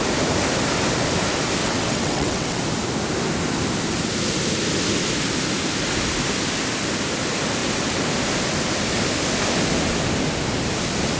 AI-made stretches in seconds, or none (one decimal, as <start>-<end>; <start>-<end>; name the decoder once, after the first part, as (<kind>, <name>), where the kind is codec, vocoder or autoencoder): 1.6-2.6 (vocoder, WaveNeXt)